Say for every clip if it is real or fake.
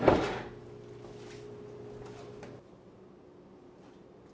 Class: real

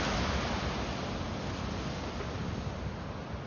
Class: real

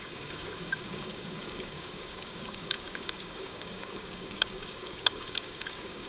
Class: fake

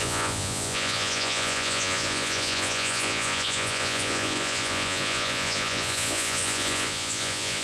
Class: fake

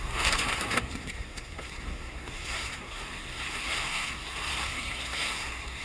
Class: fake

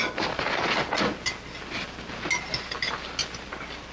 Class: real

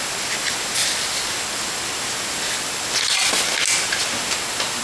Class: real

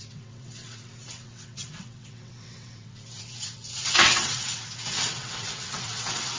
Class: fake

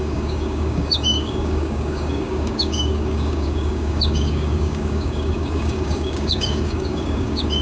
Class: fake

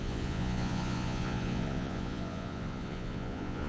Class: fake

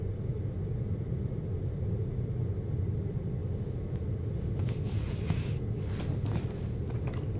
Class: real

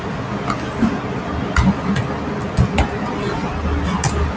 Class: real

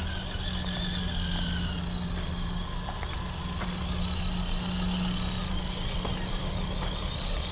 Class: real